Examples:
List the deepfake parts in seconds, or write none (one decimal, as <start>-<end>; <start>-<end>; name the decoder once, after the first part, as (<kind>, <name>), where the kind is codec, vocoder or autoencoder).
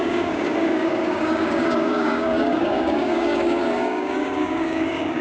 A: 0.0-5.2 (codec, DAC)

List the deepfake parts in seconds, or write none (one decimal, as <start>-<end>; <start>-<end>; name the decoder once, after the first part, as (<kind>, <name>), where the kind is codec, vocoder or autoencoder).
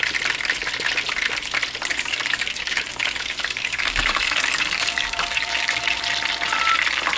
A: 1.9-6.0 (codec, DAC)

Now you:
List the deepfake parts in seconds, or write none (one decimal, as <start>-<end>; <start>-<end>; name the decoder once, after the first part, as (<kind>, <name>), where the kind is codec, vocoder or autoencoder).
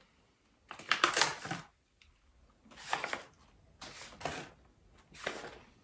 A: none